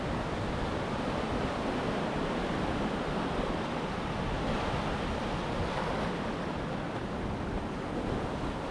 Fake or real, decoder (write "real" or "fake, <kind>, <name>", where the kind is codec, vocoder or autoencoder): real